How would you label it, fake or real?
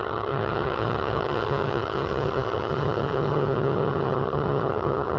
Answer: fake